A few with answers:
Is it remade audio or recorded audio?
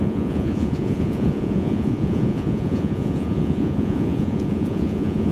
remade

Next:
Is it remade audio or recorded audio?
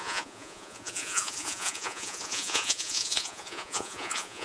remade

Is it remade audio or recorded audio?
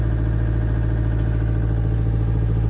recorded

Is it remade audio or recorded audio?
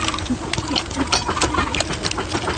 recorded